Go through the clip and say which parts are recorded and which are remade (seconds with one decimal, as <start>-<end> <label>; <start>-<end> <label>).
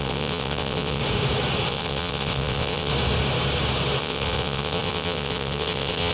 0.0-1.0 remade; 1.0-1.7 recorded; 1.7-2.9 remade; 2.9-4.0 recorded; 4.0-6.1 remade